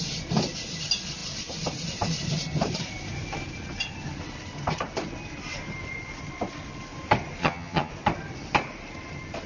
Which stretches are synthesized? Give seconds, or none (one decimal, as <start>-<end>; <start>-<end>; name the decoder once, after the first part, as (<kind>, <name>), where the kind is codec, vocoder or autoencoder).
7.4-7.9 (vocoder, HiFi-GAN)